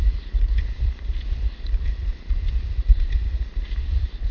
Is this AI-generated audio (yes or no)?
no